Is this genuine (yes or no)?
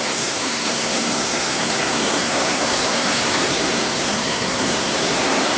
no